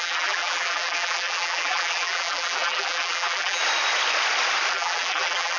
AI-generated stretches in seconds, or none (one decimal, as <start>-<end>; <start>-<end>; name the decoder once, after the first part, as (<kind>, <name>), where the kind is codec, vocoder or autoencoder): 0.0-3.6 (vocoder, BigVGAN v2); 4.7-5.6